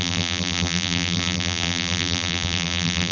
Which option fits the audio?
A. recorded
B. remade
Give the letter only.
B